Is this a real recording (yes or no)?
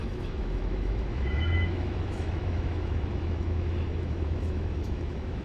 no